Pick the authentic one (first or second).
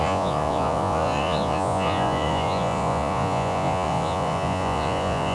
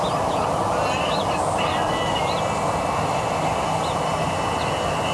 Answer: second